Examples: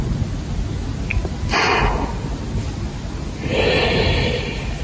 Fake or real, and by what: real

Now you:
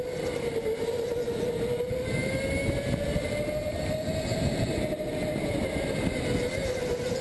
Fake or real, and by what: real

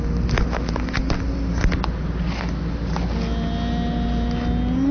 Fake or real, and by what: real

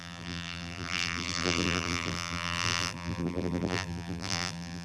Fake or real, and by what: fake, vocoder, BigVGAN v2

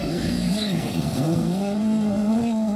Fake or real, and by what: fake, codec, SNAC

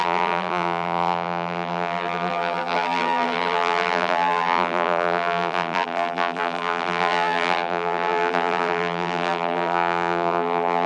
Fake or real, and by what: fake, vocoder, BigVGAN v2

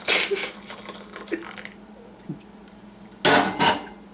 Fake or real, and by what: real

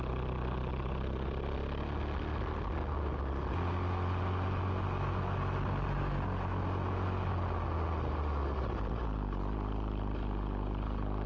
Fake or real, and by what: real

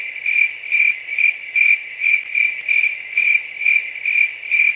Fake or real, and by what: real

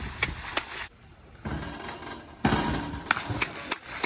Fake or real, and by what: real